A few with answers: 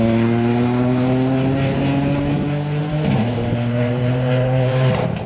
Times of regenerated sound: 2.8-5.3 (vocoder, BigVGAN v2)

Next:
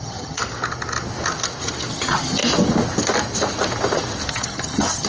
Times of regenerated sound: 0.0-0.4 (vocoder, HiFi-GAN); 1.9-2.4; 4.3-5.1

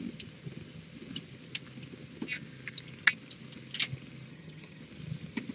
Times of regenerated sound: 4.3-4.8 (vocoder, HiFi-GAN)

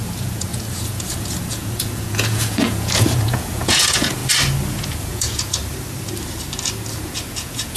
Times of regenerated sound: 0.0-4.2 (vocoder, Vocos); 4.7-5.6; 7.3-7.8